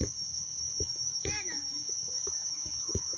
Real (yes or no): no